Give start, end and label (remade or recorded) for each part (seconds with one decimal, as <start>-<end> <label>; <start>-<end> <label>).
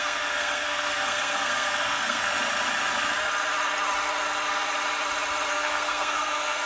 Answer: 0.0-2.3 remade; 2.3-5.5 recorded; 5.5-6.7 remade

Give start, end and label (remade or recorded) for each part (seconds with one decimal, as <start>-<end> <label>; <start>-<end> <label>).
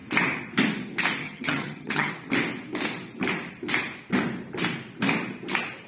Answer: 0.0-1.2 recorded; 1.2-2.1 remade; 2.1-5.9 recorded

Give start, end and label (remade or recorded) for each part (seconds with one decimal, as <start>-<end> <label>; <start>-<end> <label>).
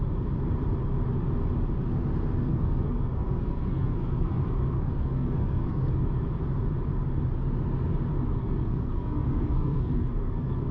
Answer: 0.0-2.3 recorded; 2.3-5.9 remade; 5.9-8.4 recorded; 8.4-10.7 remade